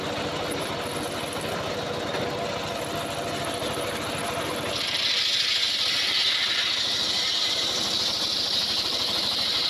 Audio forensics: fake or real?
real